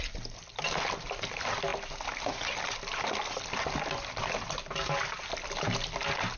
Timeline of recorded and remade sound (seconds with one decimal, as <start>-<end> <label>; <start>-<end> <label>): 0.0-6.4 recorded